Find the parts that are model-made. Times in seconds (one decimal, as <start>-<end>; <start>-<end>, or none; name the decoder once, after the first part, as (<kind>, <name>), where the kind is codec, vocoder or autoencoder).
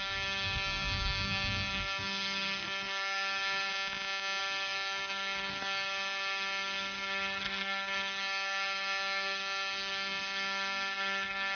0.0-3.7 (codec, SNAC); 4.4-11.5